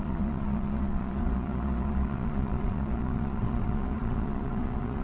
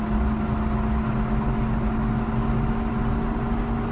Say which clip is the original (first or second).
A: second